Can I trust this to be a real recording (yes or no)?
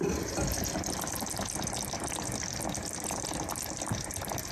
no